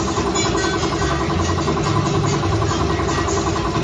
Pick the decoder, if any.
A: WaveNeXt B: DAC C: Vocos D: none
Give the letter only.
D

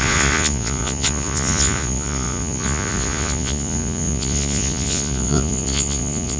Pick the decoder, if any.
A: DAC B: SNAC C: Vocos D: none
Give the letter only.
C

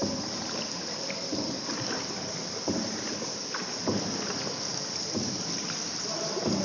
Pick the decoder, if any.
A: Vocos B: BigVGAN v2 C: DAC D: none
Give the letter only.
D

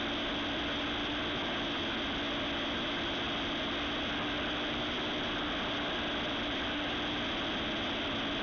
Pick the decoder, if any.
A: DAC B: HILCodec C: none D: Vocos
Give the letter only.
C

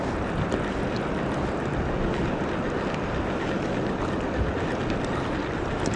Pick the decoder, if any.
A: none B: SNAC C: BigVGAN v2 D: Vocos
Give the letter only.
A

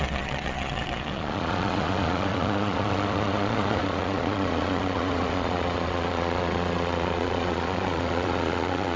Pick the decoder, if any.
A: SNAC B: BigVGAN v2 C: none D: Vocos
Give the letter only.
D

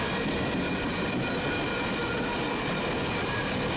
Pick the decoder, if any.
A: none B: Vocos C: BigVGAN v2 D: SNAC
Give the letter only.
A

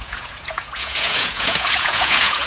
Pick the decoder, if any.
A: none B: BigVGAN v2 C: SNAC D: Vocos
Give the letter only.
D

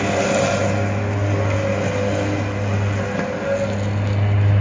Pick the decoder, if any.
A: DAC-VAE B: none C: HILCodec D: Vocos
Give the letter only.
B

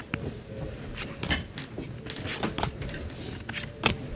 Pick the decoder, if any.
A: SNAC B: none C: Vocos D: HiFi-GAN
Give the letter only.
B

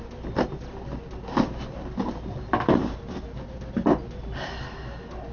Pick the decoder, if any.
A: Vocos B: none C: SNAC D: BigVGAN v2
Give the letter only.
B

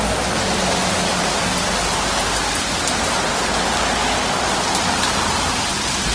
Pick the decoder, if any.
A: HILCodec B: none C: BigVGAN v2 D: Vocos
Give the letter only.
B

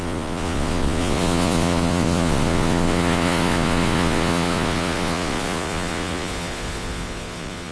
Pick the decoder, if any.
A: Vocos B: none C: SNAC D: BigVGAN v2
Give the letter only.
A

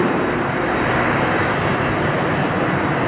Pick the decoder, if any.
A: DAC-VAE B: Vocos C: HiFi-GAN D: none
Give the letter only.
D